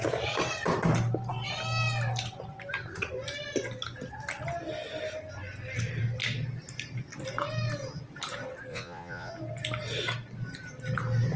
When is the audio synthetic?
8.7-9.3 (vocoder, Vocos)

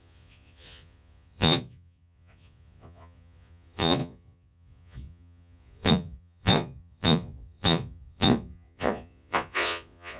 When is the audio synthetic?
0.0-10.2 (vocoder, Vocos)

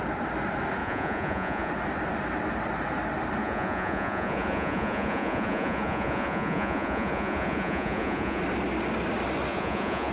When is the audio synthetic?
0.8-1.7 (vocoder, Vocos); 3.4-8.4; 9.5-10.1